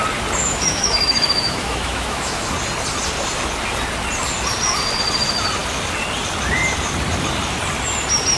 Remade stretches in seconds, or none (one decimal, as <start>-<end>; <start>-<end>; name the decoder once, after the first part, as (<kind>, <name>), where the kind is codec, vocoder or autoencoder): 0.4-2.5 (autoencoder, DAC-VAE)